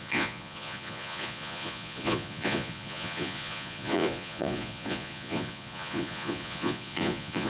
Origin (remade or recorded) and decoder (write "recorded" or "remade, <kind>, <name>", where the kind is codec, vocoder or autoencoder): remade, vocoder, Vocos